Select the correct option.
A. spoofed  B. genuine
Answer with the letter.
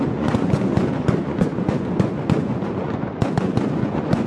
A